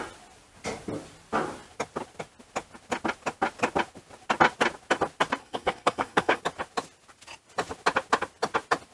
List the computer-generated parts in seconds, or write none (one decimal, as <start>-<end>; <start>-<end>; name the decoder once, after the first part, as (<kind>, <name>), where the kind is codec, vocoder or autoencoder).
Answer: 5.4-6.4 (codec, SNAC)